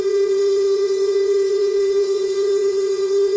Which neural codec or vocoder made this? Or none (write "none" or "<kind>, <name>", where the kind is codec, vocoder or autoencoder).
vocoder, Vocos